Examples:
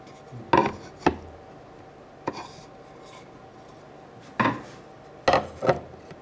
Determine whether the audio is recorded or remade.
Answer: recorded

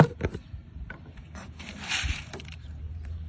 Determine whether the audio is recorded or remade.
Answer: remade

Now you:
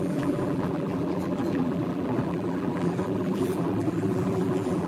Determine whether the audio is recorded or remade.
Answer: remade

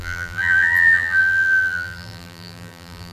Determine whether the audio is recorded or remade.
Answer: remade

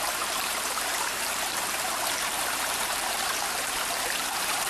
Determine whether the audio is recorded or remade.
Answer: remade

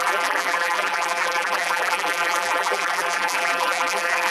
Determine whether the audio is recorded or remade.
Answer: remade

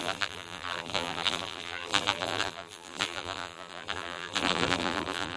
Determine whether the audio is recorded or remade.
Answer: remade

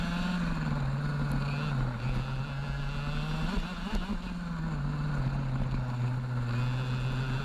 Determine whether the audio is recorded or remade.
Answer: recorded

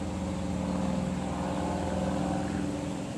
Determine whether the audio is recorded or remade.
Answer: recorded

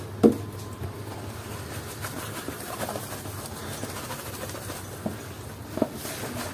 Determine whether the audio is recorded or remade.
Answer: recorded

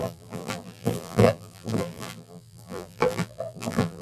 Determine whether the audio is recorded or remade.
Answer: remade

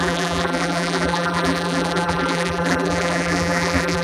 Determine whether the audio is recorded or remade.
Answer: remade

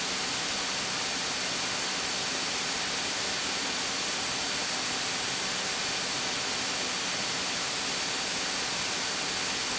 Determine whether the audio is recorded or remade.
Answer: recorded